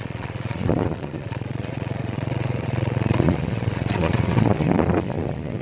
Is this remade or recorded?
remade